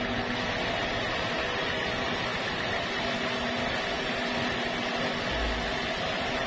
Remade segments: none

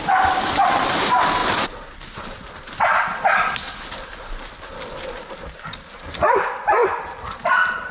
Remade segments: none